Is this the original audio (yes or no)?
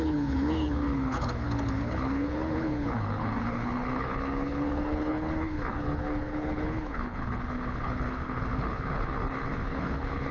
no